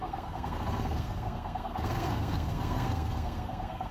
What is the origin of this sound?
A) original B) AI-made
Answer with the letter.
B